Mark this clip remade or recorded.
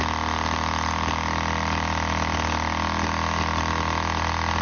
recorded